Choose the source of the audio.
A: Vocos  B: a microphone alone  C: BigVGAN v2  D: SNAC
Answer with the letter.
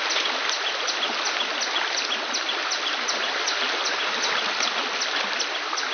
B